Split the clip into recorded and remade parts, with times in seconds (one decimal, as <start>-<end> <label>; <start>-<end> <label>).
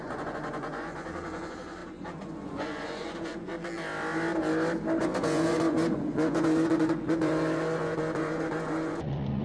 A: 0.0-3.5 remade; 3.5-5.0 recorded; 5.0-9.4 remade